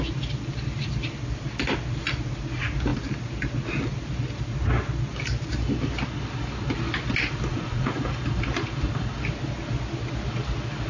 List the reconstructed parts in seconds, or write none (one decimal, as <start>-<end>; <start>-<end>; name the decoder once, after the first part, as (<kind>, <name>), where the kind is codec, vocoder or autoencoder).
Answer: 7.5-8.0 (vocoder, Vocos)